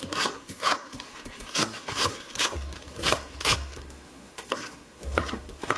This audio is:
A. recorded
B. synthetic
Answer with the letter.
B